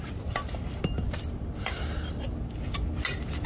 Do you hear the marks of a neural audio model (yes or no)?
no